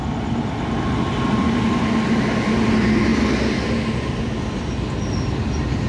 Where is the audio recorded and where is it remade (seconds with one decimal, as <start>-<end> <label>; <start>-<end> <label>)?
0.0-5.9 recorded